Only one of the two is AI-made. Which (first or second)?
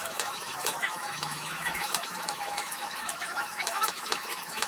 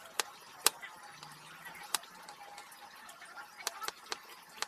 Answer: first